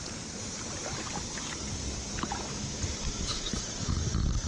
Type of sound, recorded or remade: recorded